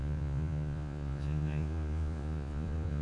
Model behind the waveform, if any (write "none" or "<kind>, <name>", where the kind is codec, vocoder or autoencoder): vocoder, Vocos